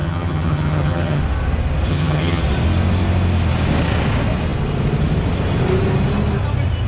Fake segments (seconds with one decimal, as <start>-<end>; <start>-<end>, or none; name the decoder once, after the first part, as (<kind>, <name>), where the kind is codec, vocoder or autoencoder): 0.0-1.2 (vocoder, HiFi-GAN); 1.9-2.4